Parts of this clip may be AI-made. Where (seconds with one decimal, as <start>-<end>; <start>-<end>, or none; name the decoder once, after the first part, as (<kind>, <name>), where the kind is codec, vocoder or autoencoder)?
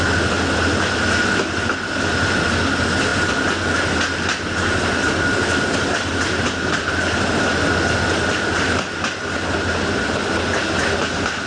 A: none